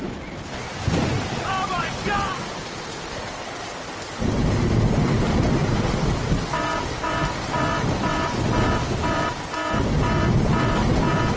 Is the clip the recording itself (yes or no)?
yes